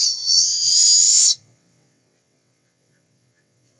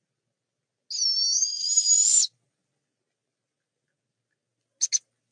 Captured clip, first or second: second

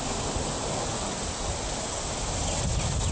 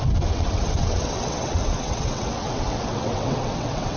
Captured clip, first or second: first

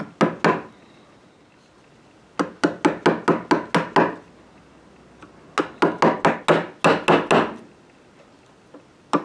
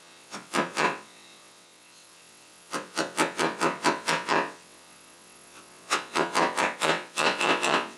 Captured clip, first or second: first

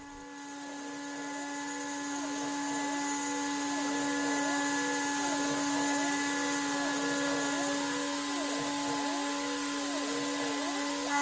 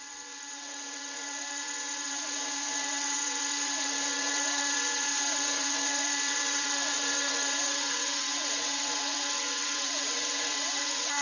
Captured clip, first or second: first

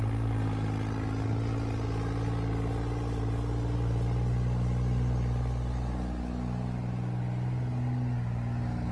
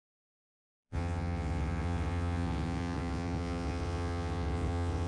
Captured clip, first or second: first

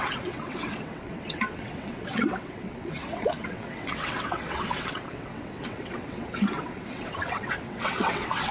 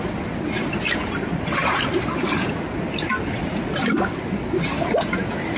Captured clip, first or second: second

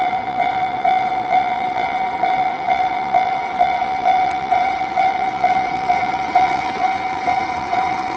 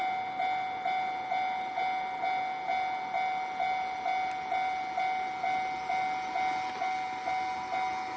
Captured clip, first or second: second